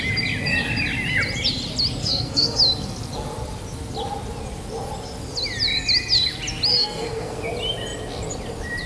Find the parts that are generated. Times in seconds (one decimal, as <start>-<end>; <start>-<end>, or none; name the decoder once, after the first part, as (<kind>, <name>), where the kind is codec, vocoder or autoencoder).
2.0-2.6 (codec, SNAC); 6.7-7.4